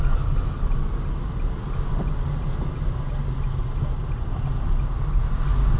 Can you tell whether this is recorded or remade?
recorded